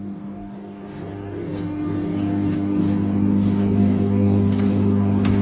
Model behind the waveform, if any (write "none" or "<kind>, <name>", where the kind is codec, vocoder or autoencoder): codec, DAC